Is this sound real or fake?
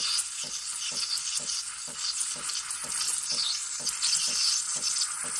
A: real